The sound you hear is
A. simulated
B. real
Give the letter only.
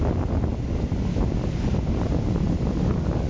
B